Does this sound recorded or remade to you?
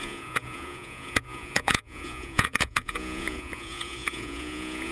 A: remade